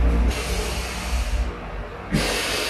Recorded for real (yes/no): yes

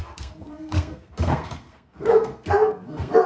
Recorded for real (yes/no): no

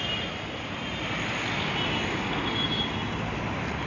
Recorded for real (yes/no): yes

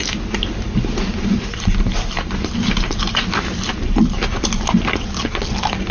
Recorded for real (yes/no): yes